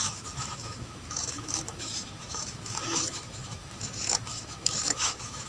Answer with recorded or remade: remade